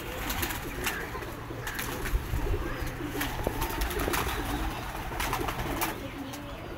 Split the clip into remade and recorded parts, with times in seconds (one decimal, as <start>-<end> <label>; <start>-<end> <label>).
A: 0.0-6.8 recorded